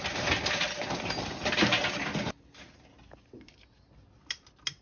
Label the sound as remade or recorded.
recorded